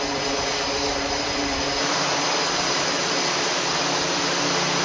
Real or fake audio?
real